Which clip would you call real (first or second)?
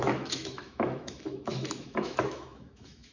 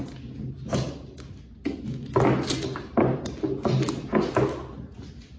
second